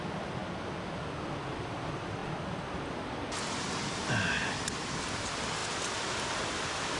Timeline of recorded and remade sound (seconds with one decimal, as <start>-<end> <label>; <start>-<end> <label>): 0.0-0.4 remade; 0.4-1.7 recorded; 1.7-2.2 remade; 2.2-4.7 recorded; 4.7-7.0 remade